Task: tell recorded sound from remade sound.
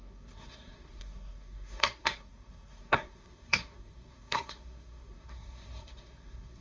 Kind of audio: remade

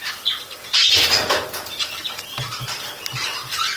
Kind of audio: recorded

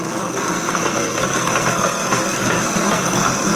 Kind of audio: remade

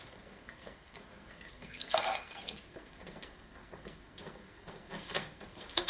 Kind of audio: remade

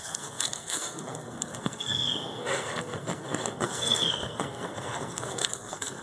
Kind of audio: remade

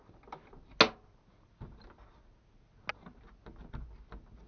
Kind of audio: recorded